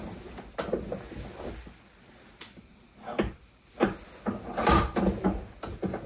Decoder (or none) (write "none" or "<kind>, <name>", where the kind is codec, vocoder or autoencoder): none